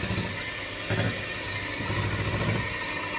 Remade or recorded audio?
recorded